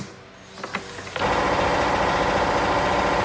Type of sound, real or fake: real